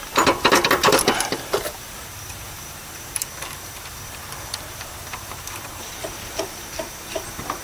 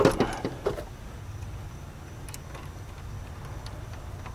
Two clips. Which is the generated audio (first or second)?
first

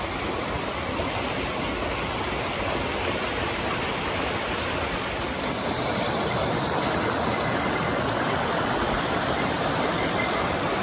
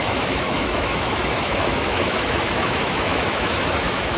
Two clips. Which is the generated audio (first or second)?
second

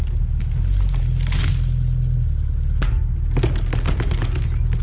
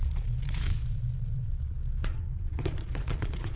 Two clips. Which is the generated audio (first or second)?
second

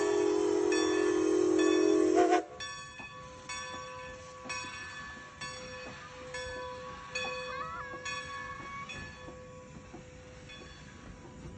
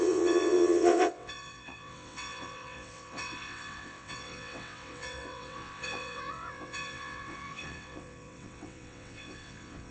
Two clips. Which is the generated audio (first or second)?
second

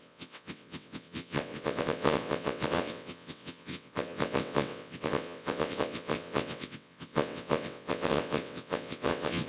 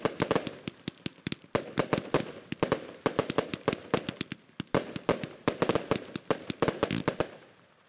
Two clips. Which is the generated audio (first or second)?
first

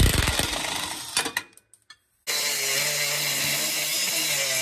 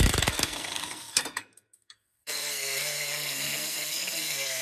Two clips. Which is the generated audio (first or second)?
second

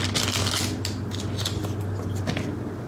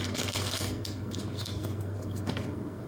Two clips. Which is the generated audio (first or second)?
second